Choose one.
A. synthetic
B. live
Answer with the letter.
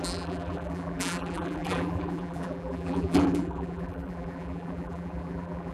A